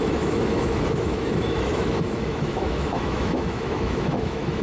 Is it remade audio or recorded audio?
remade